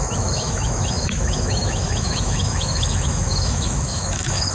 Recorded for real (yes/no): no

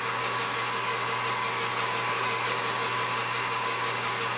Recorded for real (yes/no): no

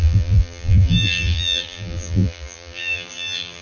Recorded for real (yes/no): no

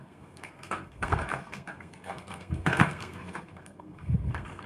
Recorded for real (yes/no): no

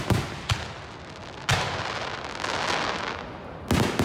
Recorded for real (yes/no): yes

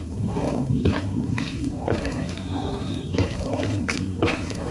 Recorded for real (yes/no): no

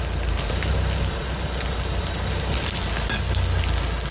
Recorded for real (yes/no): yes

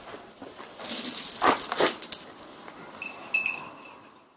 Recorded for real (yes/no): yes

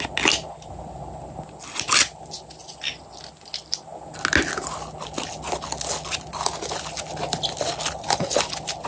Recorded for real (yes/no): yes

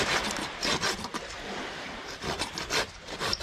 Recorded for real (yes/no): yes